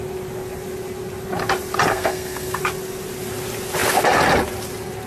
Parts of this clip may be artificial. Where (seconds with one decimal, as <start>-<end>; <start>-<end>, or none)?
1.9-2.6